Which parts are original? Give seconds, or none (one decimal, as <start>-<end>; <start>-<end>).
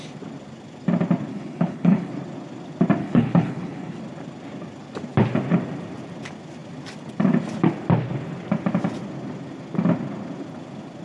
0.0-1.3; 2.1-3.0; 4.0-11.0